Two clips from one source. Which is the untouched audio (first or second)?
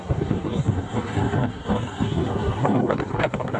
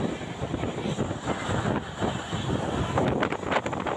second